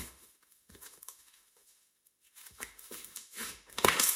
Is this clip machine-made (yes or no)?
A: yes